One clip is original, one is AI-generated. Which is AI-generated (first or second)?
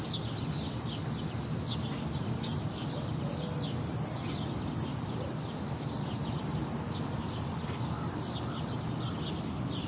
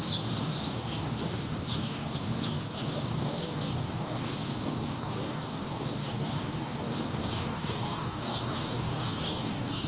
second